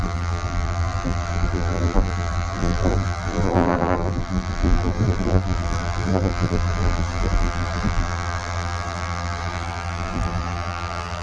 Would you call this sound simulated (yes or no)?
yes